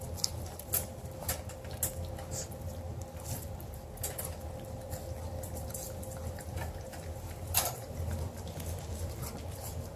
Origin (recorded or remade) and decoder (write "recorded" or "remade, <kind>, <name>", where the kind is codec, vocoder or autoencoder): recorded